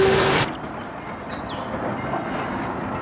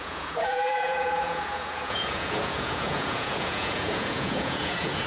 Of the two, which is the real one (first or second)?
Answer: first